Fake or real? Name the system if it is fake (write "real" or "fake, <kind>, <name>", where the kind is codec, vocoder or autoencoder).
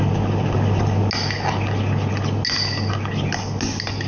real